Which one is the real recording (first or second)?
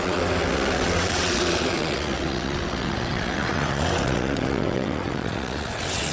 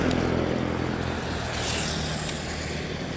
second